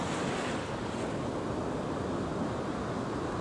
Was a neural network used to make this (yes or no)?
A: no